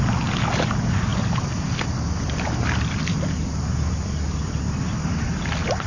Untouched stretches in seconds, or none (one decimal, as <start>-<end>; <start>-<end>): 0.0-5.9